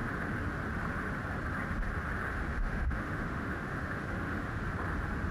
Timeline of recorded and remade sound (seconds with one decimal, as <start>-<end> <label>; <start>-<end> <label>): 0.0-2.5 recorded; 2.5-4.6 remade; 4.6-5.3 recorded